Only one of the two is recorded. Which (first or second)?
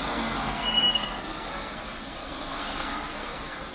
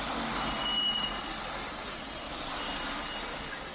second